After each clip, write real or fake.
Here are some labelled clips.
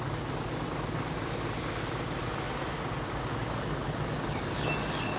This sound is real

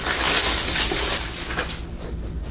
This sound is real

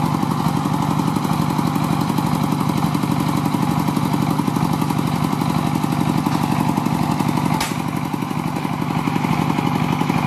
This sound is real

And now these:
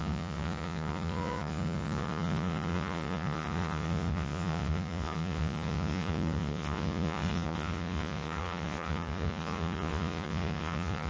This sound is fake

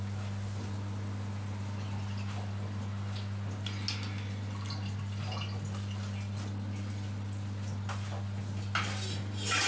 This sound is real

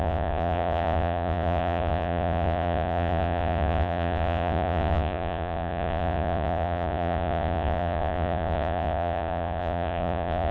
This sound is fake